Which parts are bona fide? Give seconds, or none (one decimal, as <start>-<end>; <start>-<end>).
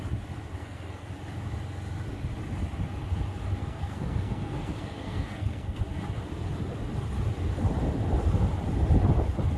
0.0-0.6; 1.1-3.6; 5.8-9.6